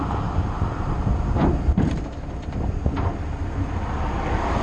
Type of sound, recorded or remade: recorded